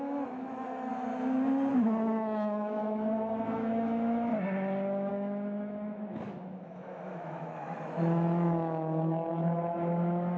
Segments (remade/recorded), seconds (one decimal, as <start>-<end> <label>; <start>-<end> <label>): 0.0-0.9 remade; 0.9-1.7 recorded; 1.7-4.3 remade; 4.3-5.1 recorded; 5.1-10.4 remade